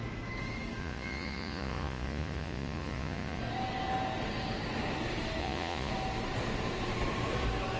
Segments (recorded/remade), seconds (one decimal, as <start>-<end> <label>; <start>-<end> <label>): 0.0-0.8 recorded; 0.8-3.4 remade; 3.4-5.4 recorded; 5.4-5.9 remade; 5.9-7.8 recorded